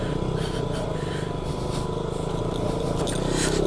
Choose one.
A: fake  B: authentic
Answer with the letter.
B